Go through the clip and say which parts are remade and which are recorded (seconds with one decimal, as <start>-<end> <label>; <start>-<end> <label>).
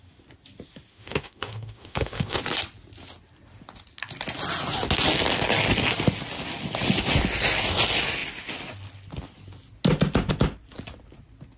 0.0-0.9 recorded; 0.9-2.4 remade; 2.4-11.6 recorded